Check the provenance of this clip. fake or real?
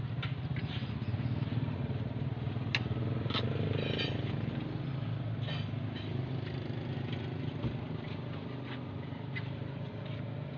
real